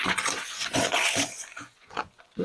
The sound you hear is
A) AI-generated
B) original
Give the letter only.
A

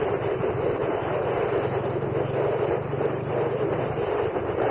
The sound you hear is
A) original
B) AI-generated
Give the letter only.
A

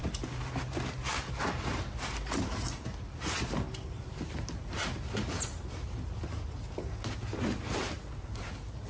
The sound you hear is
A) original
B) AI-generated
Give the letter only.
A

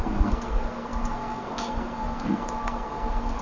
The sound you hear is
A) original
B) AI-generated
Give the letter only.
B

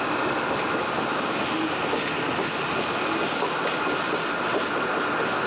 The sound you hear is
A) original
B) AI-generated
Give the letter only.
A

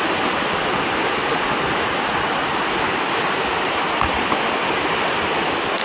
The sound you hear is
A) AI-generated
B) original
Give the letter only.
B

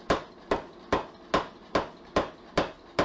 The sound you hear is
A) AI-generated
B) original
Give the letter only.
B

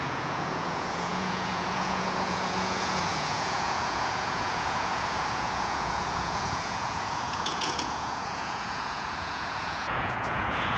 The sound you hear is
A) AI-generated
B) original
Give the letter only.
A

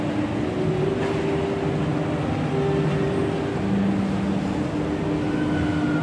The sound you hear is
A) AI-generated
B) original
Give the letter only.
B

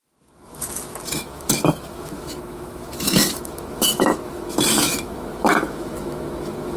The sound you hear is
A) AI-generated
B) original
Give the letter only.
A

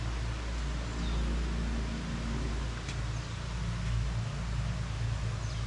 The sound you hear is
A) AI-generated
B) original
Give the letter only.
B